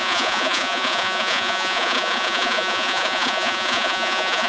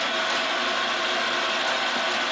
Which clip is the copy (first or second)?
first